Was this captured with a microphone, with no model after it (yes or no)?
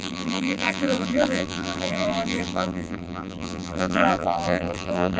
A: no